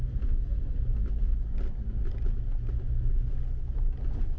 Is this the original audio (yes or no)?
yes